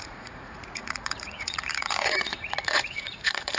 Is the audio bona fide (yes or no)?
no